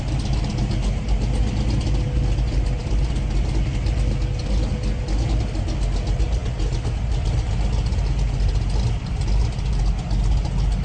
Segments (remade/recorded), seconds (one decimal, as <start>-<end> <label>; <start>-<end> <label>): 0.0-10.8 recorded